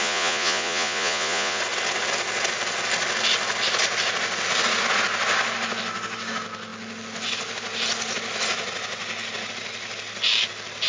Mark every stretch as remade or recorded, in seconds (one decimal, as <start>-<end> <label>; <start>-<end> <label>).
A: 0.0-1.6 remade; 1.6-10.9 recorded